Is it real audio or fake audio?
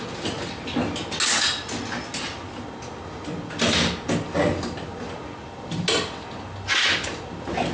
real